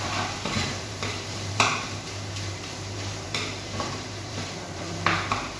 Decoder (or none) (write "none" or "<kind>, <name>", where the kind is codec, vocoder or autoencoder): vocoder, BigVGAN v2